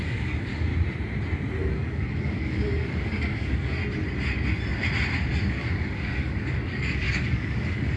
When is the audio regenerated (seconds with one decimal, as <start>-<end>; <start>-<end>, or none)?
0.0-0.7; 1.6-3.8; 5.5-8.0